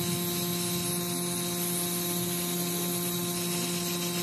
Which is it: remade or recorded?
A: recorded